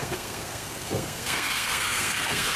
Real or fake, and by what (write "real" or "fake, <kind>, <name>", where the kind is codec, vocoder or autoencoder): fake, codec, SNAC